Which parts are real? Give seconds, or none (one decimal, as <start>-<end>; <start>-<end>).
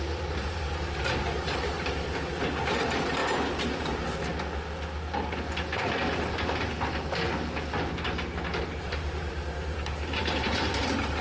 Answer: 3.2-3.8; 4.3-8.5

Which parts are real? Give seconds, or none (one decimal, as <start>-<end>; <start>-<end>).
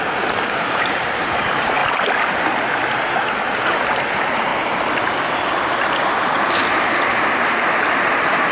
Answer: 1.8-4.1; 4.5-8.5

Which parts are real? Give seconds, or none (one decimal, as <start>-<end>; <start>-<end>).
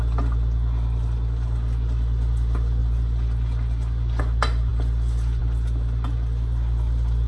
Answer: 0.0-7.3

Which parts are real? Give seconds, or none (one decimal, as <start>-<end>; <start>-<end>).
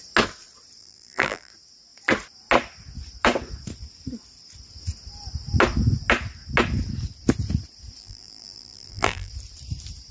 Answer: 0.0-0.8; 1.5-8.0; 9.3-10.1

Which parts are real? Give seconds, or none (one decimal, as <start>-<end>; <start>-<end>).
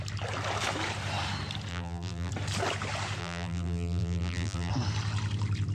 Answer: 0.0-1.7; 2.3-3.2; 4.7-5.7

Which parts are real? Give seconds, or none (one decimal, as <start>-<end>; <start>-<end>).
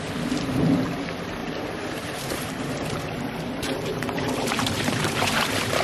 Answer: 0.0-1.4; 3.2-3.9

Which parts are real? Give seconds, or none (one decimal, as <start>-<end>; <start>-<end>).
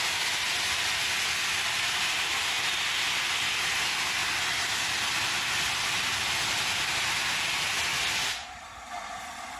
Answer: 0.0-9.6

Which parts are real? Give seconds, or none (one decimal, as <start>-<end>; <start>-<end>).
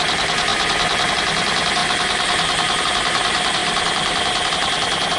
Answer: 0.0-3.6; 4.5-5.2